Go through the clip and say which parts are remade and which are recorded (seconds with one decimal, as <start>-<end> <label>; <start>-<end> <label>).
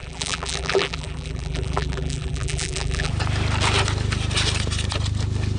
0.0-3.1 remade; 3.1-5.6 recorded